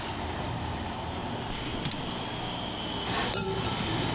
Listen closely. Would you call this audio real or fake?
real